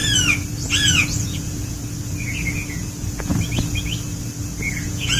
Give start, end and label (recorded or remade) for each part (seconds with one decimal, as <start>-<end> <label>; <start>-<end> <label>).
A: 0.0-0.7 recorded; 0.7-1.8 remade; 1.8-2.8 recorded; 2.8-3.3 remade; 3.3-4.7 recorded; 4.7-5.2 remade